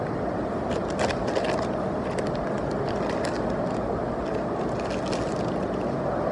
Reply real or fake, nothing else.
real